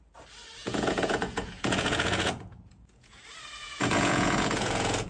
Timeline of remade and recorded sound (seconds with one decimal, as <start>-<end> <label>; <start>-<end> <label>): 0.0-0.6 recorded; 0.6-3.2 remade; 3.2-3.6 recorded; 3.6-5.1 remade